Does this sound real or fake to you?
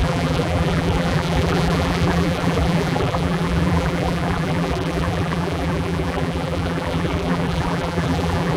fake